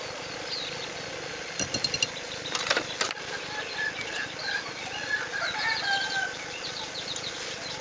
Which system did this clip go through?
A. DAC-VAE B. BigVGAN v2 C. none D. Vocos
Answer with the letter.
C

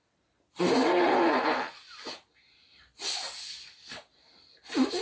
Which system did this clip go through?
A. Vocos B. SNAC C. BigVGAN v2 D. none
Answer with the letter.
D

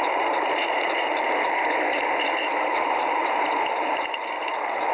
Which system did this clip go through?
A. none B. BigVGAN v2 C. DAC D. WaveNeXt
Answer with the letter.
A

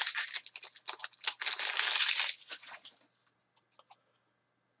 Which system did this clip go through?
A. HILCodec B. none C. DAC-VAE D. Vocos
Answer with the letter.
B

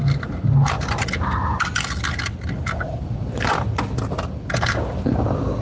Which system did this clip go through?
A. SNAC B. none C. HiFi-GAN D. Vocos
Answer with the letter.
B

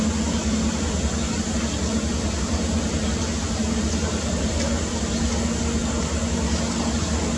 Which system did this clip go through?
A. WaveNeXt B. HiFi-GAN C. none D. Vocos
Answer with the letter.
C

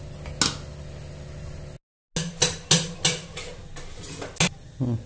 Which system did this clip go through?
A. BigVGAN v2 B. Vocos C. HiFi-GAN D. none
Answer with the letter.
D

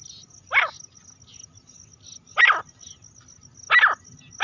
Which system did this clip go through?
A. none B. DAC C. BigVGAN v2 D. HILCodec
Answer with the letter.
A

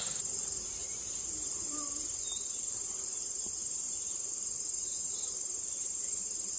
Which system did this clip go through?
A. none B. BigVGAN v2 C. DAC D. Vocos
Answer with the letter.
B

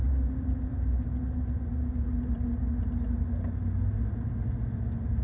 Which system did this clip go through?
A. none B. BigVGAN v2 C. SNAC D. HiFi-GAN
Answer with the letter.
A